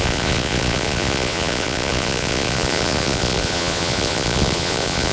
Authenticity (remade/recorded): remade